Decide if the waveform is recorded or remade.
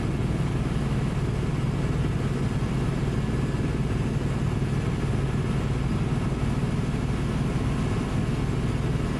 recorded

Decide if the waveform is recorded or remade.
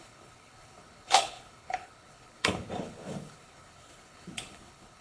remade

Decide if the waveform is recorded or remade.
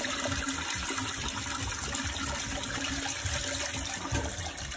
recorded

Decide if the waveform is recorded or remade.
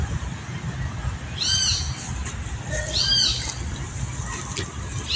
recorded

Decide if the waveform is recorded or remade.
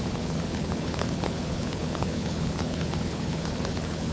remade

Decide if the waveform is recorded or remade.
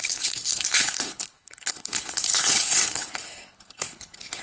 remade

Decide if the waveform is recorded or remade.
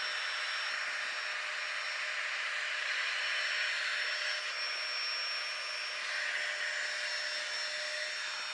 recorded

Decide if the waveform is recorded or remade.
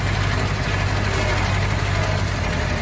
recorded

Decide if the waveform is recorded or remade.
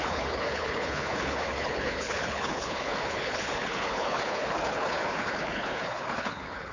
remade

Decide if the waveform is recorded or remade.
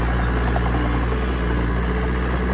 recorded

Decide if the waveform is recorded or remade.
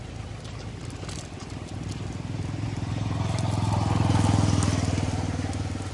recorded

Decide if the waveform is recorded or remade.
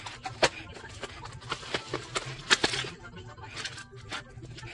recorded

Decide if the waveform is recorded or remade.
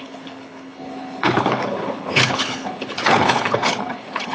remade